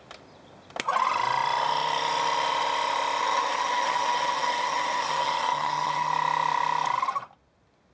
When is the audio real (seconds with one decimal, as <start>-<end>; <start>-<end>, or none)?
0.0-3.2; 6.1-7.9